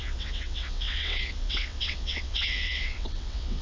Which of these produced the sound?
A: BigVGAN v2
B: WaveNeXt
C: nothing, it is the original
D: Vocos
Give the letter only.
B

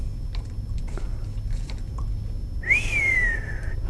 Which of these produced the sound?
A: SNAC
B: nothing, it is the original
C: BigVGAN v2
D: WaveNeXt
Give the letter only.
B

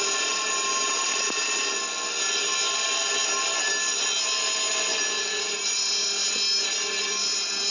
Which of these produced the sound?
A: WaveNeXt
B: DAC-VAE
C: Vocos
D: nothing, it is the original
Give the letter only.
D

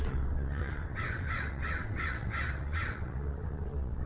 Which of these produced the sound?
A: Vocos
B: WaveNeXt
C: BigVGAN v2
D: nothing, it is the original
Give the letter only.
B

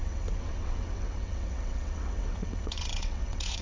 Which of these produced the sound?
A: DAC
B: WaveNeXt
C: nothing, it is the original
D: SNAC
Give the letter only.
B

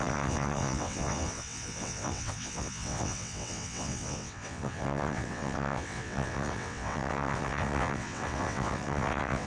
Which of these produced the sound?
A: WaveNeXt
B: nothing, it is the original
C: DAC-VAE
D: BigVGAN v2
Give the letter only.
A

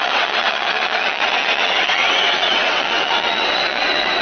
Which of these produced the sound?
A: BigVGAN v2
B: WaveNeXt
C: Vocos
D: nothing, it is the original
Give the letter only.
B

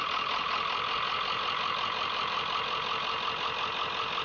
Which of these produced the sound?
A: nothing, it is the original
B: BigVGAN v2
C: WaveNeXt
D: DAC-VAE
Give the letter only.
A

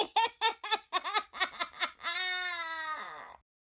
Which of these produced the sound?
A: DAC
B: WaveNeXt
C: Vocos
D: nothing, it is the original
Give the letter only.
D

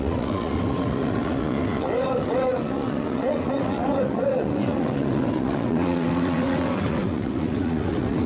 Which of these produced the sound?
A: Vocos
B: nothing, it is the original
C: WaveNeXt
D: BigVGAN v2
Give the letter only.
C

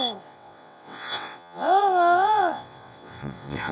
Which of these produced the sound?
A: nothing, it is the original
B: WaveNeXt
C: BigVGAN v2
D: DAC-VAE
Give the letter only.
B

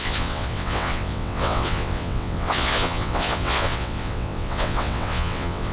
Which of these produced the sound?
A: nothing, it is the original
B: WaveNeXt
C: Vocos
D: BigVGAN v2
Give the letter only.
B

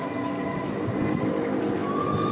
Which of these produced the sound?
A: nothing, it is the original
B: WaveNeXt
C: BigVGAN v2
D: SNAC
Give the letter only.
A